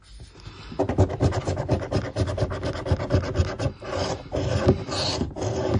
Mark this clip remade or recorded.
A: recorded